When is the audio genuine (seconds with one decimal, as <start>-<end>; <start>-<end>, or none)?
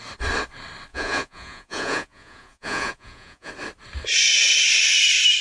0.0-0.9; 3.5-5.4